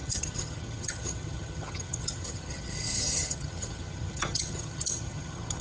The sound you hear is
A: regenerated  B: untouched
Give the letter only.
A